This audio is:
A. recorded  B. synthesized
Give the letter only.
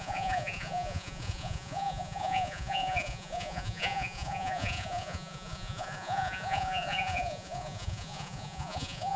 B